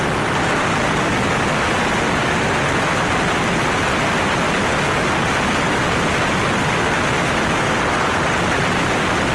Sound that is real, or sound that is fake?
real